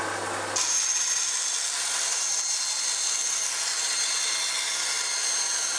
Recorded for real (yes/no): yes